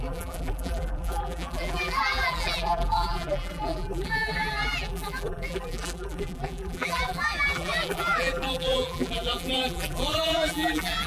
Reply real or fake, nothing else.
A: fake